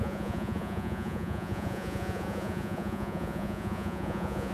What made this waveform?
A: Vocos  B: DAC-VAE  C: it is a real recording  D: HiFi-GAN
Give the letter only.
A